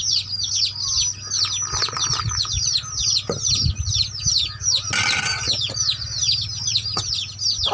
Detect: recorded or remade recorded